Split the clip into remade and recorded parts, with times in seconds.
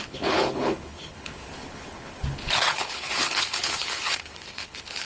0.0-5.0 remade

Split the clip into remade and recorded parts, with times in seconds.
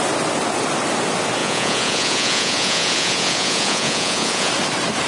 0.0-1.4 recorded; 1.4-4.5 remade; 4.5-5.1 recorded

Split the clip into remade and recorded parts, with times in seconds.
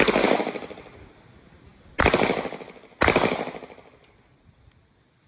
0.0-5.3 recorded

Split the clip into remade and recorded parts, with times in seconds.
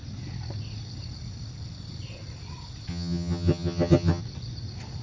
0.0-2.9 recorded; 2.9-4.2 remade; 4.2-5.0 recorded